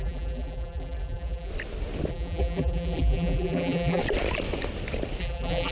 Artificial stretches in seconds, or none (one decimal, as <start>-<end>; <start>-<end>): 0.0-1.5; 2.1-4.0; 5.2-5.7